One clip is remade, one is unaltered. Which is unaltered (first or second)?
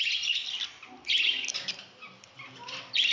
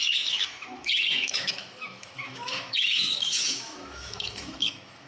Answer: first